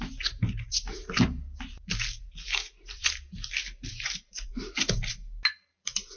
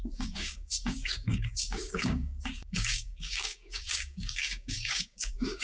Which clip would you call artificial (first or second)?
second